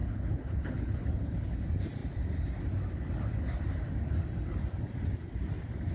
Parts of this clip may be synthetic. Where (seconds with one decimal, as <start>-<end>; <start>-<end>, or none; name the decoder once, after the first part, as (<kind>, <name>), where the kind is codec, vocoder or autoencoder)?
0.0-1.6 (codec, HILCodec)